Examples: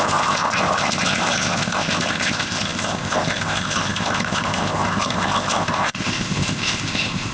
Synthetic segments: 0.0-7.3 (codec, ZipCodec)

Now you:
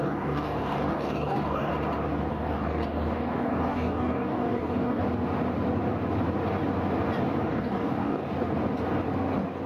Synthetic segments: 0.0-1.7 (codec, DAC); 2.3-5.0; 7.4-8.2

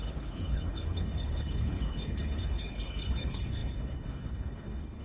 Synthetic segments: 0.0-5.0 (codec, HILCodec)

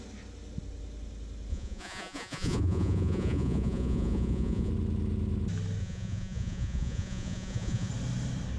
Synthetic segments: 1.5-4.7 (vocoder, Vocos); 5.8-7.9

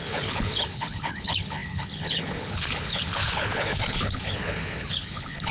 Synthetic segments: 0.0-5.5 (codec, HILCodec)

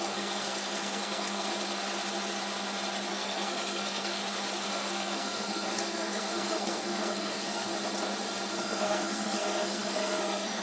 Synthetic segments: 0.0-1.5 (codec, SNAC); 3.1-4.2; 4.7-7.7; 8.6-10.6

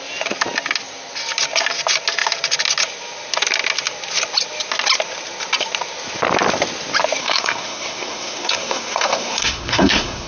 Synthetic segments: 7.2-10.3 (codec, SNAC)